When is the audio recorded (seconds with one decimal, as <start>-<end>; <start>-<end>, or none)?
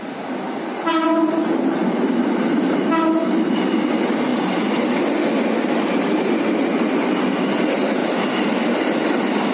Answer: 0.0-8.0